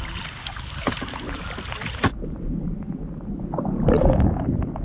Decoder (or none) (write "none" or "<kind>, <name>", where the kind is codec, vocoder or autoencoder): vocoder, BigVGAN v2